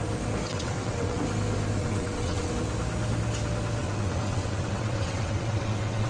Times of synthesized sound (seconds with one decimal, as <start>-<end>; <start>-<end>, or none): 0.5-1.2; 1.8-2.5; 3.8-6.1